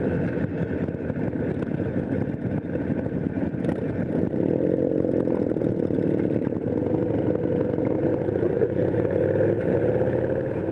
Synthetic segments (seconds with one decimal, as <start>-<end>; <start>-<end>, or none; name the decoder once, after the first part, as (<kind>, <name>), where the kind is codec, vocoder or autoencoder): 8.1-9.2 (vocoder, Vocos)